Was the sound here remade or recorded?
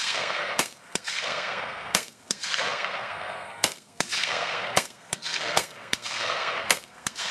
remade